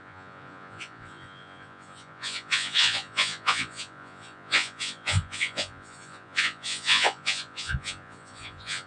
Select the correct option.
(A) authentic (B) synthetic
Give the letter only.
B